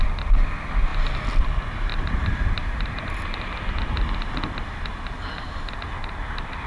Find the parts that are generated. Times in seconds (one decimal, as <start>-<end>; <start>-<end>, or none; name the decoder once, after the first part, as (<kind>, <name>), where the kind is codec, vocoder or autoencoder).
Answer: 1.9-4.4 (vocoder, BigVGAN v2); 6.0-6.7